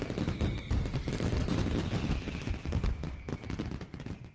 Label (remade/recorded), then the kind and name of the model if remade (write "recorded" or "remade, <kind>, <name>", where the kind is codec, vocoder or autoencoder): recorded